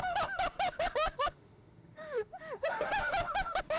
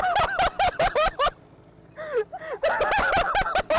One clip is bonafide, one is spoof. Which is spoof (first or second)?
first